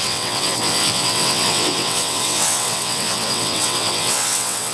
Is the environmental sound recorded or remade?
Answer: remade